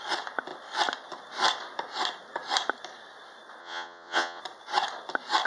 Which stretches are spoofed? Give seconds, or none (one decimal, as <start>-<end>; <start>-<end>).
3.6-4.4